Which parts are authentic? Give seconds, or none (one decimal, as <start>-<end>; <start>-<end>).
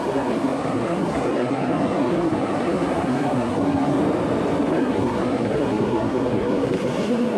4.0-4.7